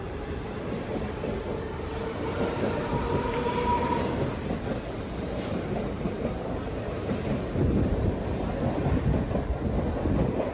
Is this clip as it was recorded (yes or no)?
no